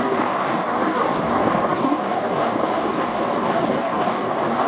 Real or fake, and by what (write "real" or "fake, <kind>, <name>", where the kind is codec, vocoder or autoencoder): fake, codec, DAC